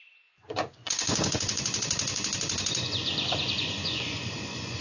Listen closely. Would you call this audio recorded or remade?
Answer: remade